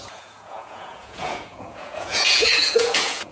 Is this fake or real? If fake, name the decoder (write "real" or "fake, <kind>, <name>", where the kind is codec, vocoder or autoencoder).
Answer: fake, vocoder, Vocos